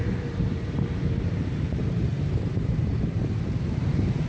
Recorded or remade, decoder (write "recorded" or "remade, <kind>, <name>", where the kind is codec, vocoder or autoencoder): remade, vocoder, BigVGAN v2